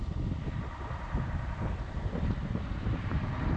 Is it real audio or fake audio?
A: real